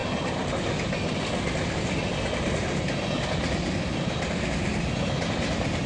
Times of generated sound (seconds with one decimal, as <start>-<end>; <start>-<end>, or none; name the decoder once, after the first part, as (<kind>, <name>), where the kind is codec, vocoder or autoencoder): none